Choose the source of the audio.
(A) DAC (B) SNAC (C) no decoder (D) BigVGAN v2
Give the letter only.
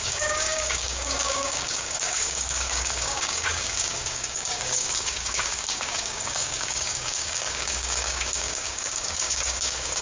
A